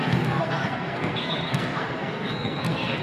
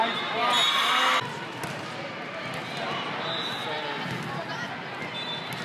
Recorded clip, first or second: second